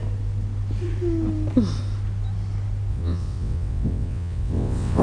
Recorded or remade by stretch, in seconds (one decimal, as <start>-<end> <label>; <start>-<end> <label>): 0.0-2.9 recorded; 2.9-5.0 remade